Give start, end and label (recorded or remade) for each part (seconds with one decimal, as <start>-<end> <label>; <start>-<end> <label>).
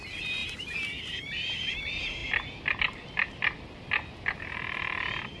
0.0-5.4 recorded